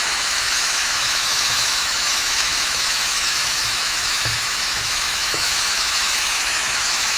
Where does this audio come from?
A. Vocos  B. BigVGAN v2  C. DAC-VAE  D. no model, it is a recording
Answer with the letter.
C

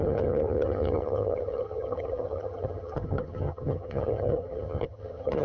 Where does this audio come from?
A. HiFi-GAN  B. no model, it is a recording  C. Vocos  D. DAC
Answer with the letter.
A